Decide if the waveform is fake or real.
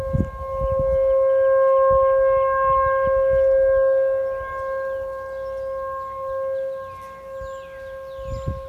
real